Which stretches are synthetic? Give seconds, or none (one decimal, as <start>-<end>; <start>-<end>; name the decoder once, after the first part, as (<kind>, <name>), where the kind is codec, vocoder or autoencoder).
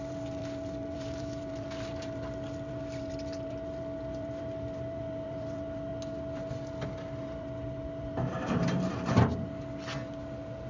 0.0-5.9 (vocoder, BigVGAN v2); 6.5-9.3